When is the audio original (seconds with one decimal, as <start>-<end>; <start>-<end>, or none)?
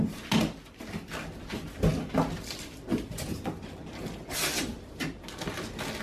0.0-6.0